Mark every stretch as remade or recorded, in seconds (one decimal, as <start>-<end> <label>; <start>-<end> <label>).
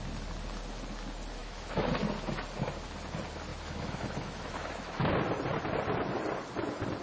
0.0-1.4 recorded; 1.4-1.9 remade; 1.9-3.5 recorded; 3.5-5.1 remade; 5.1-7.0 recorded